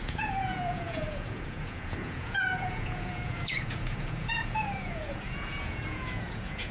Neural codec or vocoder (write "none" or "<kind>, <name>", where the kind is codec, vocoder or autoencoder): vocoder, Vocos